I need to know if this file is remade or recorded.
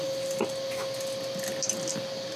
recorded